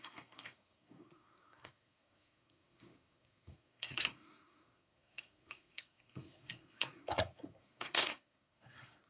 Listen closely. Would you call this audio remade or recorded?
remade